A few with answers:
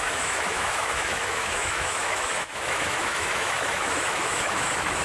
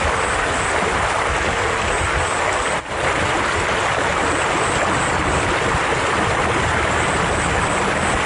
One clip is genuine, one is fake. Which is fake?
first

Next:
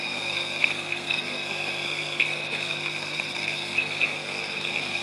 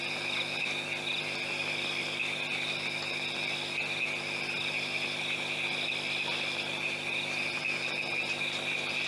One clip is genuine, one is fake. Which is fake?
first